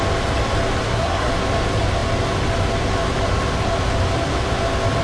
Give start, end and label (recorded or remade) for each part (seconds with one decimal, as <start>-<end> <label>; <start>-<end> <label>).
0.0-0.8 recorded; 0.8-1.3 remade; 1.3-5.0 recorded